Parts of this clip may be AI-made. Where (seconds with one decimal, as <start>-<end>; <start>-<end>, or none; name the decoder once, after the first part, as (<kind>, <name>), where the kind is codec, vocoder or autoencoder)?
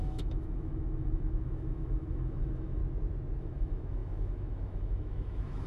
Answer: 0.0-2.8 (autoencoder, DAC-VAE); 3.4-5.7